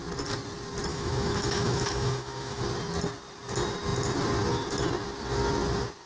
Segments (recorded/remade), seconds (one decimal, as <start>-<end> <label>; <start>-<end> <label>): 0.0-0.9 recorded; 0.9-2.6 remade; 2.6-6.1 recorded